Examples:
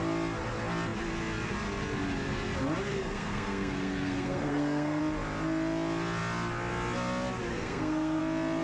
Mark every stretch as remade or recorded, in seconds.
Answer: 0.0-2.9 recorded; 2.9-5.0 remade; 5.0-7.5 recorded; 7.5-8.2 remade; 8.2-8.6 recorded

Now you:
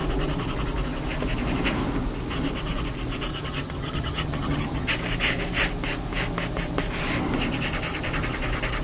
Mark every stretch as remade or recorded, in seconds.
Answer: 0.0-3.3 recorded; 3.3-4.9 remade; 4.9-8.8 recorded

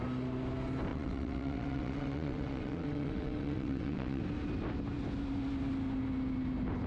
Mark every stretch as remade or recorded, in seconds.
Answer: 0.0-0.9 recorded; 0.9-4.2 remade; 4.2-6.9 recorded